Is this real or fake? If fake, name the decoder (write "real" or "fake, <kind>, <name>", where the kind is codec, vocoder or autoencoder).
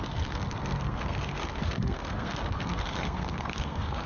fake, codec, SNAC